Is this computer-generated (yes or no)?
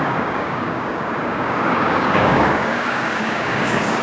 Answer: yes